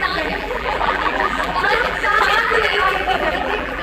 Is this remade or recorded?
remade